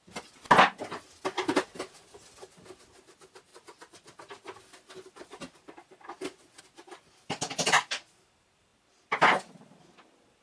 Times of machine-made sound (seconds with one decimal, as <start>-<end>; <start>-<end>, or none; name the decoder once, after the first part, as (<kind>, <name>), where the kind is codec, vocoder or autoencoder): none